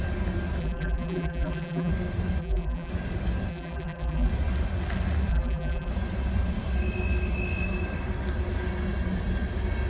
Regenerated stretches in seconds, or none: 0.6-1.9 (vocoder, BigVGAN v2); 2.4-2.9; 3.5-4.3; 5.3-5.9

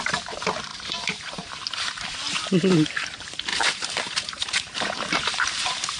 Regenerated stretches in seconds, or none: 0.7-1.5 (vocoder, BigVGAN v2); 3.5-6.0